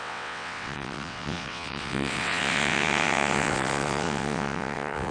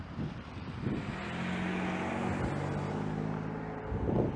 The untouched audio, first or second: second